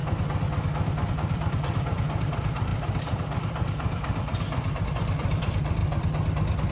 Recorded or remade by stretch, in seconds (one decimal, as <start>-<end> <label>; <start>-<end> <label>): 0.0-1.1 recorded; 1.1-5.8 remade; 5.8-6.7 recorded